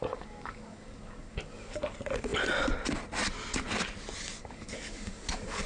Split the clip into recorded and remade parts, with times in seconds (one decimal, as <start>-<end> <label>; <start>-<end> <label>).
0.0-1.8 remade; 1.8-4.4 recorded; 4.4-5.7 remade